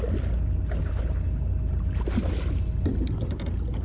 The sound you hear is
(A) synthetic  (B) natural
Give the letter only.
B